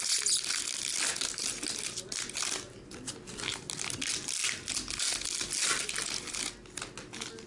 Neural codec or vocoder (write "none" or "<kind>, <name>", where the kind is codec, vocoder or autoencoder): none